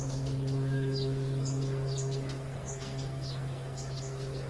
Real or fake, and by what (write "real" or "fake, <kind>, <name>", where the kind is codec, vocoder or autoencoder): fake, codec, SNAC